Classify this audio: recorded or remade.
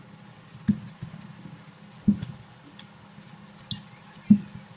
recorded